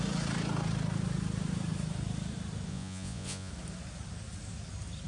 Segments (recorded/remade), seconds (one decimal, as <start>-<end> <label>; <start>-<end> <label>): 0.0-2.7 recorded; 2.7-3.5 remade; 3.5-5.1 recorded

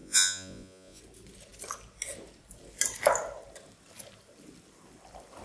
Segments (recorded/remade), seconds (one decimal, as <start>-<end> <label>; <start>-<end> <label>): 0.0-1.0 remade; 1.0-5.4 recorded

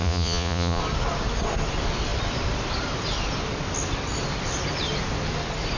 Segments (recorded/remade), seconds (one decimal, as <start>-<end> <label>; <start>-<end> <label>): 0.0-0.8 remade; 0.8-5.8 recorded

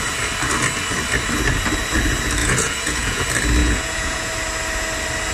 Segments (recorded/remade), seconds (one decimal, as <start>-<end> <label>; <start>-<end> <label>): 0.0-2.4 recorded; 2.4-3.2 remade; 3.2-3.6 recorded; 3.6-4.3 remade; 4.3-5.3 recorded